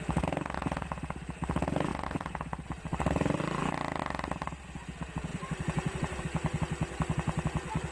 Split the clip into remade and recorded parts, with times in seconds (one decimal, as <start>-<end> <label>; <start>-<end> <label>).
0.0-1.9 recorded; 1.9-3.6 remade; 3.6-5.3 recorded; 5.3-6.2 remade; 6.2-7.9 recorded